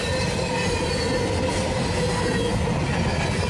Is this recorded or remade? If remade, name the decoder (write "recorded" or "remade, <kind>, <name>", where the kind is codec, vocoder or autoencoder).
recorded